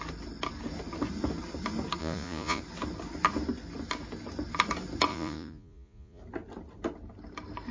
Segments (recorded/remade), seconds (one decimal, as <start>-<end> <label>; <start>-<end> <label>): 0.0-2.0 recorded; 2.0-2.6 remade; 2.6-5.1 recorded; 5.1-6.2 remade; 6.2-7.7 recorded